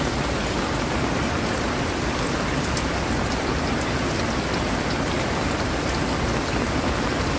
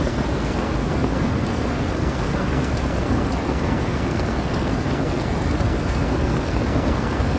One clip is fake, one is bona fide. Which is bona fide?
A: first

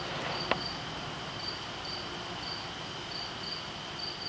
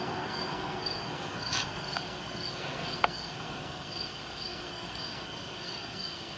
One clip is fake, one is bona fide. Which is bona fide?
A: first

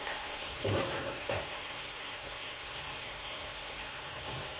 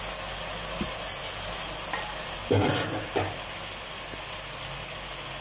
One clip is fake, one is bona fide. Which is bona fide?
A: second